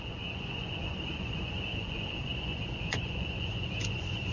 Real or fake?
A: fake